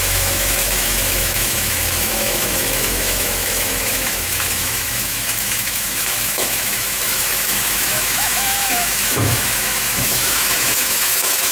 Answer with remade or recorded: remade